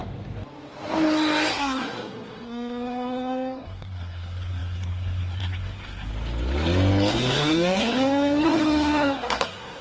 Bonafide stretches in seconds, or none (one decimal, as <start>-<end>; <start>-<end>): 0.0-1.5; 6.1-7.1